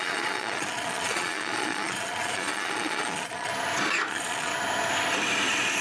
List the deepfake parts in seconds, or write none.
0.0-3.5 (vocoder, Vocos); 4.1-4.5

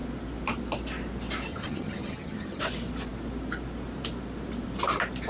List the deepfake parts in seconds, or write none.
1.5-2.6 (vocoder, HiFi-GAN)

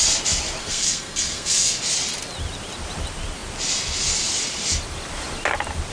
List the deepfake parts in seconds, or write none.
0.6-1.8 (codec, SNAC)

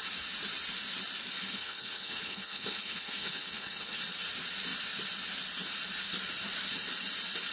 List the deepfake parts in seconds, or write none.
1.4-4.0 (codec, HILCodec)

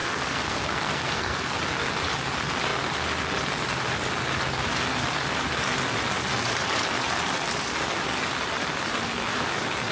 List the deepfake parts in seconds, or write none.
0.0-1.6 (codec, SNAC)

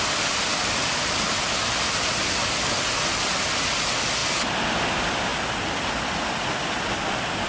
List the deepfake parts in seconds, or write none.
none